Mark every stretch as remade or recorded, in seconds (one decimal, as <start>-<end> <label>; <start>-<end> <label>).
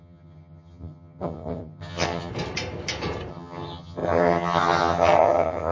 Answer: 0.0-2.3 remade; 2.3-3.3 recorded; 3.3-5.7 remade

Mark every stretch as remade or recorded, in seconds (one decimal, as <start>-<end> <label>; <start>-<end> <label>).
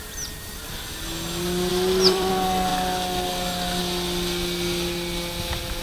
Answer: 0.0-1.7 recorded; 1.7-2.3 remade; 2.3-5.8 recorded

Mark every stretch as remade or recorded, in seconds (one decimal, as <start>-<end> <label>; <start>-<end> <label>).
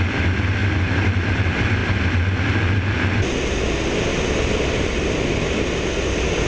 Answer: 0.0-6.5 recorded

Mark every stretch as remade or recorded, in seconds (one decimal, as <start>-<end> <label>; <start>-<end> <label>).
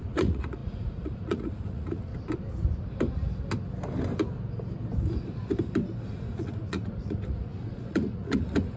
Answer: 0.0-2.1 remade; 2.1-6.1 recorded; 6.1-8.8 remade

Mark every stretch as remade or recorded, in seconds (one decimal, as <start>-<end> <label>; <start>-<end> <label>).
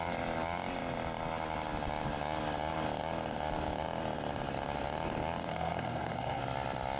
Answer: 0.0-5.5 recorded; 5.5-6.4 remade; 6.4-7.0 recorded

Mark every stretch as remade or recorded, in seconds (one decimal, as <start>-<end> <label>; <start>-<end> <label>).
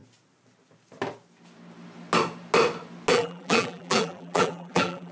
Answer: 0.0-3.1 recorded; 3.1-5.1 remade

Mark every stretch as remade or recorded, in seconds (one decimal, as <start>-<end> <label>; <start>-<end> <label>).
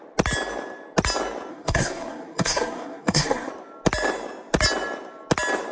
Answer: 0.0-1.5 recorded; 1.5-3.5 remade; 3.5-5.7 recorded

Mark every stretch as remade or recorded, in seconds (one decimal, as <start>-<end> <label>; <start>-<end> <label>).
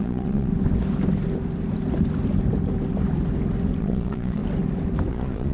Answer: 0.0-0.5 remade; 0.5-3.8 recorded; 3.8-4.4 remade; 4.4-5.1 recorded; 5.1-5.5 remade